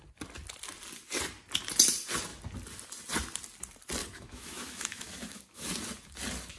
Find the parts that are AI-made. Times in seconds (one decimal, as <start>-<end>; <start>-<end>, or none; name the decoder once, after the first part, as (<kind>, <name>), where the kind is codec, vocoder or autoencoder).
4.0-5.7 (autoencoder, DAC-VAE)